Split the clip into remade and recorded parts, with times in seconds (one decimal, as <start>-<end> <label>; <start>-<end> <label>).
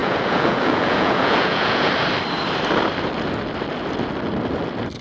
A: 0.0-1.9 remade; 1.9-5.0 recorded